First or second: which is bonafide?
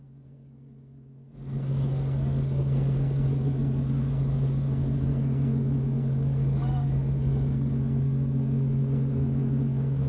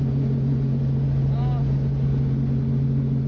second